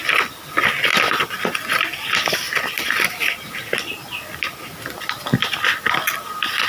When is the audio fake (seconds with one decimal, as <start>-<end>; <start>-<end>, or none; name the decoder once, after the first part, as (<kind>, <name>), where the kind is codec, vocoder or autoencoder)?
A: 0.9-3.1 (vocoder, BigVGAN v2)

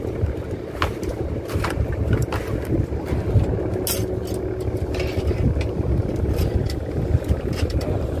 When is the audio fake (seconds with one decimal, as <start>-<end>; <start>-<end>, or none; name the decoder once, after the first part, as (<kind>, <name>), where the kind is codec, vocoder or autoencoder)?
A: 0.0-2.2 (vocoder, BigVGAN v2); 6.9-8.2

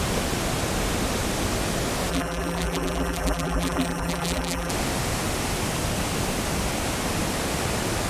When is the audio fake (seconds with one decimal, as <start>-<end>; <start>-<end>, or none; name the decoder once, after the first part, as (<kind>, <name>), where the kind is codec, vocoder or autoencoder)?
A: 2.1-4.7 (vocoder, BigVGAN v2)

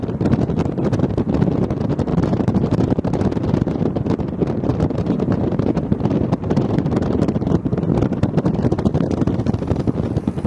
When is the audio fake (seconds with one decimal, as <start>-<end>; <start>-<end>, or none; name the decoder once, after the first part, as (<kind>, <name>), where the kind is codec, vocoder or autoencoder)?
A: 2.1-3.2 (vocoder, BigVGAN v2); 4.7-7.9

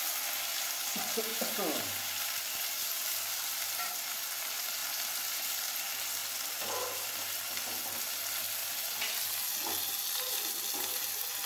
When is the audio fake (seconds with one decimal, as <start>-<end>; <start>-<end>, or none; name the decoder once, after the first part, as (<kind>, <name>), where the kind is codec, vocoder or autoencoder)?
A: 4.8-5.7 (vocoder, BigVGAN v2)